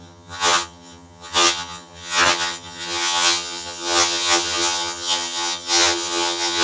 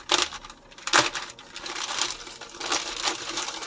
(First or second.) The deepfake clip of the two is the first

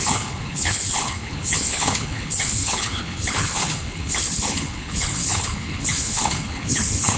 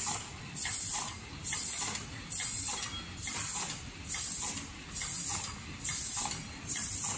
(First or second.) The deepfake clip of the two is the first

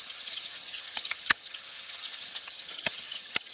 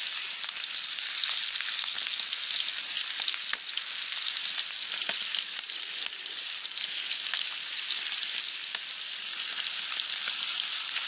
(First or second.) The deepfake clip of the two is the first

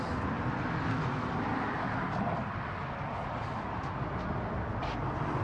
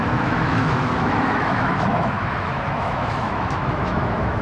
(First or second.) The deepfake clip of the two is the second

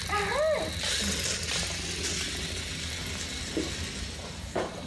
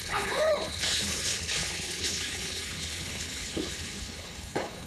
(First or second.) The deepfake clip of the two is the second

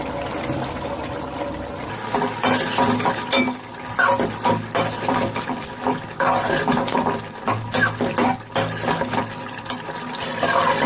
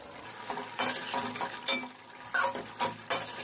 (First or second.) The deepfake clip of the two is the first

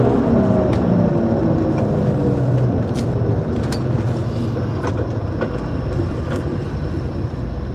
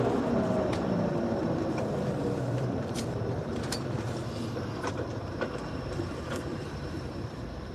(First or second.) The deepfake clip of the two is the second